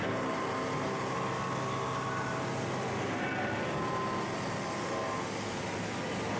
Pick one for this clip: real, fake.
real